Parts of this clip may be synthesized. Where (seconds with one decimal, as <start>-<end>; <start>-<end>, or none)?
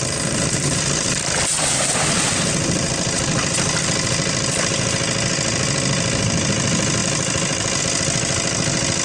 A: none